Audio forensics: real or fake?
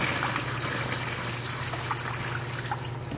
real